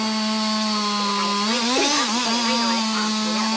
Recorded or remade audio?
recorded